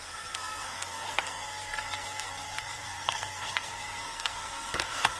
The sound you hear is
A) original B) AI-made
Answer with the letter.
B